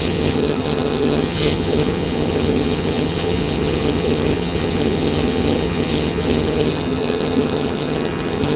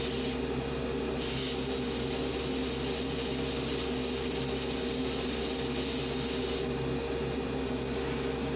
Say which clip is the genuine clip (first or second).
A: second